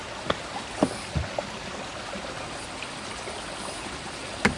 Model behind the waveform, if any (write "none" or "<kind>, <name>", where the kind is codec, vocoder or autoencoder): none